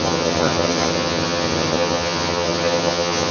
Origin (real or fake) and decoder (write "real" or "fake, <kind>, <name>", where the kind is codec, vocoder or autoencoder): fake, vocoder, HiFi-GAN